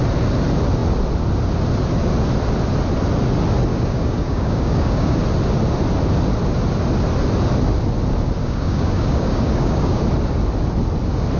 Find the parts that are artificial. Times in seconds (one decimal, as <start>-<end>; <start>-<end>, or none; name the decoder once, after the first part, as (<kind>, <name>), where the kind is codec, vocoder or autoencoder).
3.7-5.2 (codec, DAC); 8.4-10.0